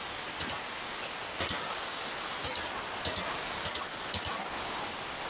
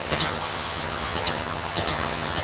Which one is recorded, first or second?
first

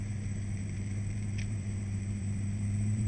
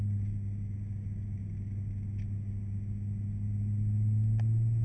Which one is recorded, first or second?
second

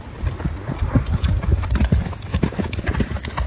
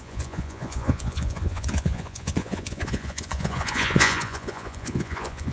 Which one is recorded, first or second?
first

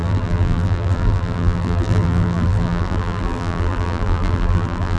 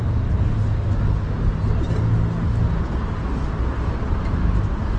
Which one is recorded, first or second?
second